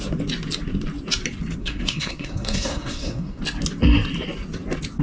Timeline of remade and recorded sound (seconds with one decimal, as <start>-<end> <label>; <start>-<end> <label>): 0.0-1.6 recorded; 1.6-3.4 remade; 3.4-5.0 recorded